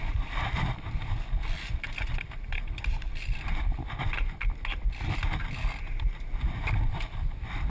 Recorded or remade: recorded